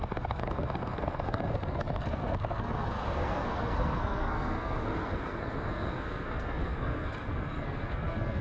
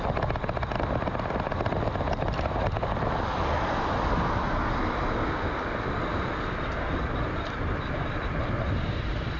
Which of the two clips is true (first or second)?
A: second